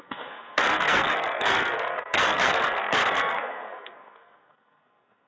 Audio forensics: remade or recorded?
remade